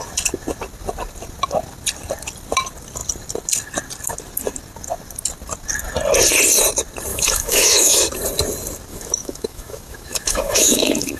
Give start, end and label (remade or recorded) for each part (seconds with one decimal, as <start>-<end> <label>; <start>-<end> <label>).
0.0-7.1 recorded; 7.1-8.1 remade; 8.1-8.9 recorded; 8.9-11.2 remade